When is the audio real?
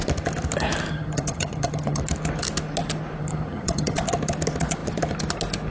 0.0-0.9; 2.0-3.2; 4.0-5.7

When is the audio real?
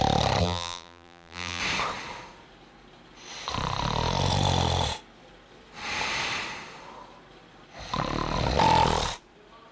0.0-0.4; 1.6-9.7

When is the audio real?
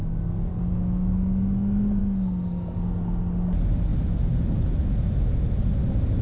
0.0-6.2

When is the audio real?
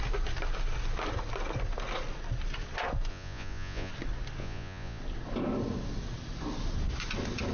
0.0-3.1; 3.9-4.4; 5.0-7.5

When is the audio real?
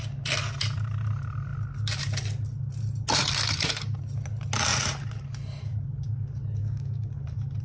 0.0-6.6; 7.1-7.6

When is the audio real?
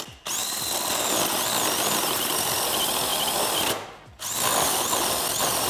0.0-5.7